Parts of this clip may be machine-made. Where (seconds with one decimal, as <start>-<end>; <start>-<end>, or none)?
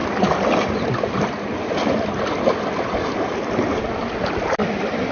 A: none